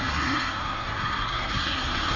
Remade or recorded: remade